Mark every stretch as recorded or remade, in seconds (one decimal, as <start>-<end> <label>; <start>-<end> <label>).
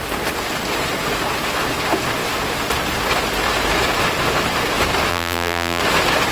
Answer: 0.0-5.1 recorded; 5.1-5.8 remade; 5.8-6.3 recorded